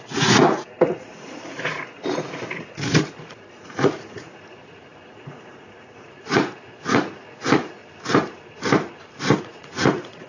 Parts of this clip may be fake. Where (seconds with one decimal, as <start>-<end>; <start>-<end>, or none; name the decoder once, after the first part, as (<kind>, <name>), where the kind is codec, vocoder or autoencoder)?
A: 0.0-7.8 (vocoder, Vocos); 9.4-10.3